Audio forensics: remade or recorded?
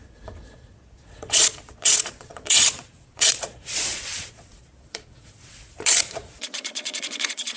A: remade